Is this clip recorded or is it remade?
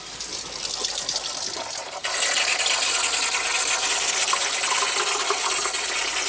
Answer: recorded